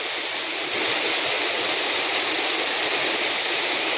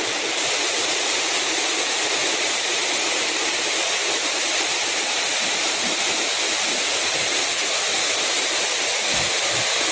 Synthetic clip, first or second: second